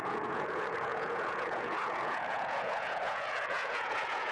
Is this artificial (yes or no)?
yes